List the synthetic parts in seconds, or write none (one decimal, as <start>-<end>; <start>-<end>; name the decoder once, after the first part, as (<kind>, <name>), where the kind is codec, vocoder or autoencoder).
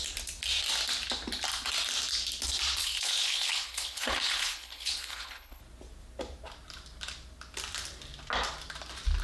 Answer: 2.8-5.6 (codec, HILCodec)